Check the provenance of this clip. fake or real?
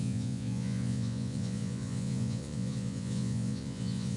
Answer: fake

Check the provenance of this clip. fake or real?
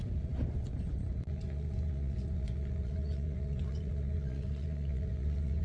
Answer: fake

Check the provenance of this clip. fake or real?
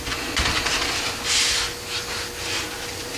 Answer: real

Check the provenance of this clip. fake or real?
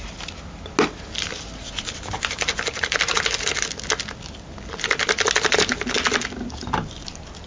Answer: real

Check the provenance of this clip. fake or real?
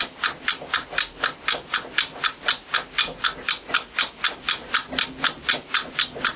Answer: real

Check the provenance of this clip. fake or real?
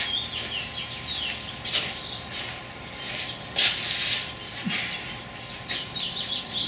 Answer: real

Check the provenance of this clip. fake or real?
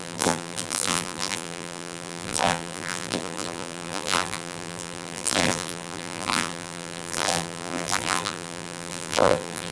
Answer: fake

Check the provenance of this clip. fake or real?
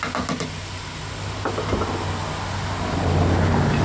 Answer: real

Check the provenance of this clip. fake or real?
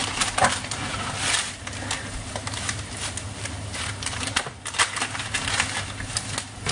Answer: real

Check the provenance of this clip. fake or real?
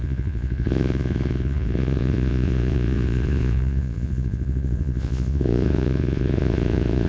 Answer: fake